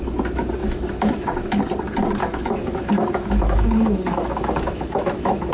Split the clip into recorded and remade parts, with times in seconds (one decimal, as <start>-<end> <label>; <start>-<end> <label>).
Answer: 0.0-0.6 recorded; 0.6-1.6 remade; 1.6-2.2 recorded; 2.2-5.5 remade